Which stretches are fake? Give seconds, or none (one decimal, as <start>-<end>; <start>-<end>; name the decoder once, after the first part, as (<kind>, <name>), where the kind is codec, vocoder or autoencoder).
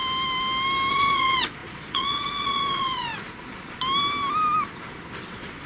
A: 0.9-3.1 (vocoder, Vocos); 5.3-5.7